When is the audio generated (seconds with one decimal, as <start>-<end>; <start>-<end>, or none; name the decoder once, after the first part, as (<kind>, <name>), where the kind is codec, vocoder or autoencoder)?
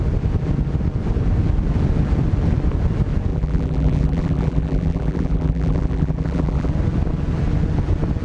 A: 3.3-6.7 (vocoder, BigVGAN v2)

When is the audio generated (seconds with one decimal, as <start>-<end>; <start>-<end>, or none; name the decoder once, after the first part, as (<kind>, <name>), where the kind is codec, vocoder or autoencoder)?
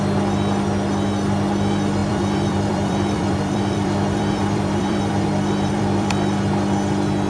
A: 2.0-6.4 (vocoder, BigVGAN v2)